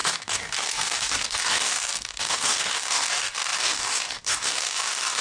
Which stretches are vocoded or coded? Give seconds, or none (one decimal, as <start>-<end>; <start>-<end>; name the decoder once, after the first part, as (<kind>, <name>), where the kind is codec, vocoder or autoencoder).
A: 0.0-5.2 (codec, DAC)